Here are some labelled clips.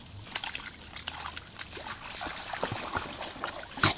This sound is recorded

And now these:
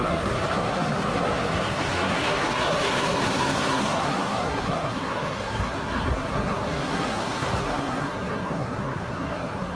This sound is remade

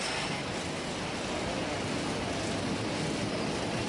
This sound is recorded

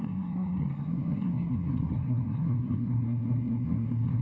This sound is remade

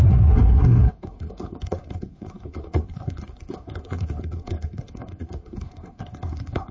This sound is remade